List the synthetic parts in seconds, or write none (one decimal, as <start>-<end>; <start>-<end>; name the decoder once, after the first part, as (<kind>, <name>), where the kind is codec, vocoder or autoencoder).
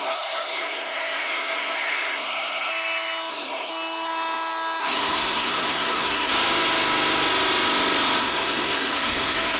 0.0-2.7 (codec, SNAC); 3.3-3.7; 4.8-6.3; 8.2-9.6